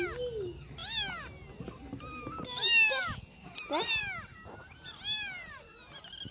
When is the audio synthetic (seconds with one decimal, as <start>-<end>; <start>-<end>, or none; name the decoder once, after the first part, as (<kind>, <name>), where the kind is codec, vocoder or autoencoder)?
none